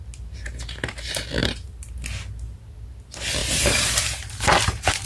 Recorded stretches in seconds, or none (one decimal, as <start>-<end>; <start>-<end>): 0.0-1.4; 1.9-3.4